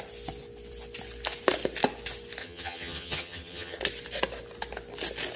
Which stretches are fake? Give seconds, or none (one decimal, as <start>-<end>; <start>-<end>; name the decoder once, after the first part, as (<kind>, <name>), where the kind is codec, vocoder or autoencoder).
2.4-3.8 (vocoder, HiFi-GAN)